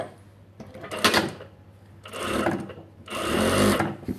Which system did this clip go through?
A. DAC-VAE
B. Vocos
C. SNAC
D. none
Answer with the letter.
D